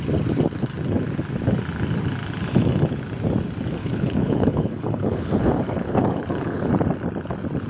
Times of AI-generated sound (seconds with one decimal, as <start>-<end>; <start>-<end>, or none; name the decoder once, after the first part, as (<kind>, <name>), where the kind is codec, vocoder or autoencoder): 3.8-6.7 (codec, HILCodec)

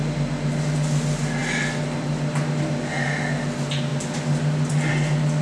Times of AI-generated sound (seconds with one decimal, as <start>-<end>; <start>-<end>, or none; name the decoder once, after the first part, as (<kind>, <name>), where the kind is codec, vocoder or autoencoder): none